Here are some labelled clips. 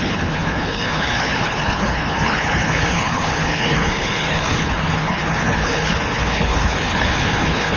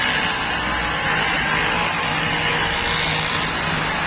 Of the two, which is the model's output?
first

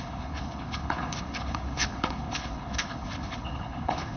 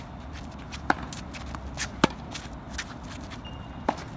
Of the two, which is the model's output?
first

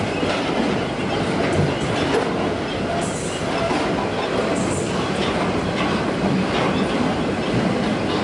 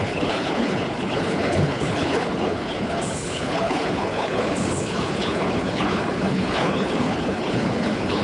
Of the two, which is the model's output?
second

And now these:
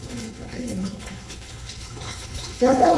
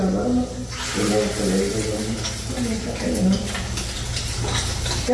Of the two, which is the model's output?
first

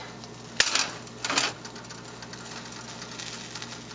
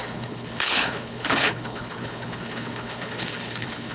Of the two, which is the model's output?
second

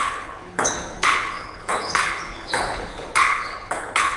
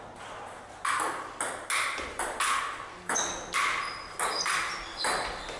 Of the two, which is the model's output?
first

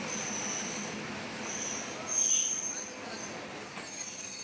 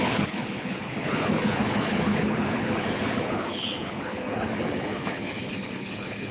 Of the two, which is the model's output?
second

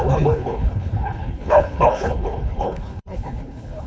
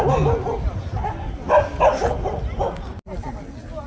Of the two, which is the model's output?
first